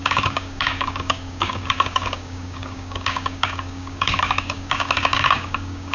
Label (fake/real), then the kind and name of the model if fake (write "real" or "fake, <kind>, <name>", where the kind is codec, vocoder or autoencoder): fake, codec, DAC